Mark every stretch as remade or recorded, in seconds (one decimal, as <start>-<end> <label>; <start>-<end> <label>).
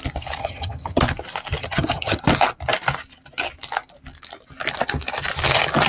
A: 0.0-0.4 recorded; 0.4-1.0 remade; 1.0-1.6 recorded; 1.6-2.2 remade; 2.2-5.9 recorded